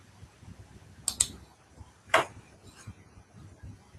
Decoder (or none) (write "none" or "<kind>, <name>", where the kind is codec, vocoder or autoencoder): none